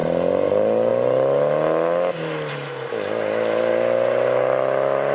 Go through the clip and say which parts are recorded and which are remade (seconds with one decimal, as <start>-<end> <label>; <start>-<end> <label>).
0.0-5.1 recorded